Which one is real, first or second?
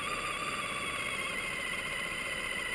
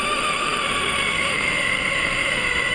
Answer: first